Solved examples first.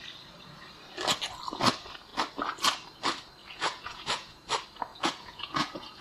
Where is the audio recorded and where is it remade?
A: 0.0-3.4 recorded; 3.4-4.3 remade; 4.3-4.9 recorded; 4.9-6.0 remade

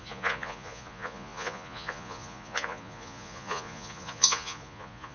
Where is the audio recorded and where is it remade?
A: 0.0-5.1 remade

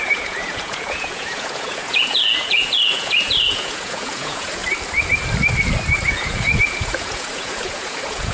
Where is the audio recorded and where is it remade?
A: 0.0-4.6 remade; 4.6-6.1 recorded; 6.1-8.3 remade

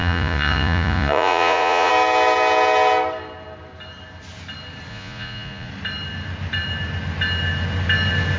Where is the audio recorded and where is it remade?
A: 0.0-1.9 remade; 1.9-4.9 recorded; 4.9-5.7 remade; 5.7-8.4 recorded

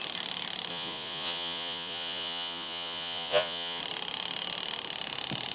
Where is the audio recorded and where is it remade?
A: 0.0-0.7 recorded; 0.7-3.8 remade; 3.8-5.5 recorded

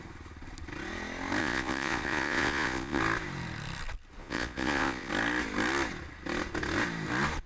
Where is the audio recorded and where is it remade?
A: 0.0-1.4 recorded; 1.4-3.0 remade; 3.0-4.2 recorded; 4.2-5.1 remade; 5.1-7.5 recorded

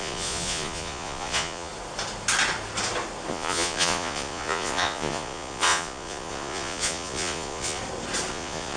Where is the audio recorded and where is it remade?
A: 0.0-1.7 remade; 1.7-3.3 recorded; 3.3-7.8 remade; 7.8-8.3 recorded; 8.3-8.8 remade

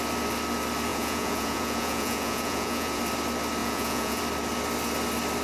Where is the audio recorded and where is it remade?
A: 0.0-0.9 recorded; 0.9-3.0 remade; 3.0-3.6 recorded; 3.6-4.2 remade; 4.2-5.4 recorded